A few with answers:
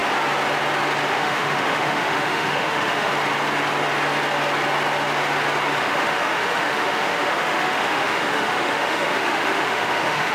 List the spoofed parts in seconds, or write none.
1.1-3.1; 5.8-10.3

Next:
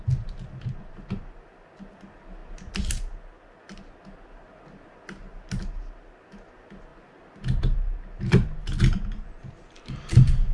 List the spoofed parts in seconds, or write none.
none

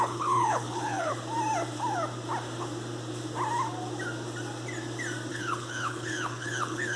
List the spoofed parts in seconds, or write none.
0.0-1.1; 5.3-7.0

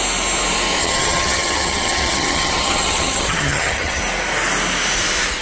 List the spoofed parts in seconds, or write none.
0.8-4.0

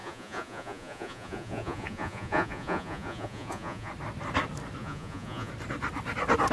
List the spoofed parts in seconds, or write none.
0.0-3.9; 4.8-5.5

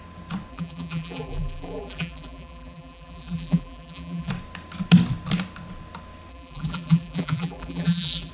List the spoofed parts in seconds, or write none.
0.5-4.3; 6.3-8.3